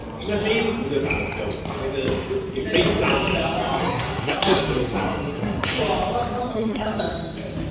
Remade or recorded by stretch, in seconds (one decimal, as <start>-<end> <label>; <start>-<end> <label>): 0.0-3.8 recorded; 3.8-5.8 remade; 5.8-6.5 recorded; 6.5-7.0 remade; 7.0-7.7 recorded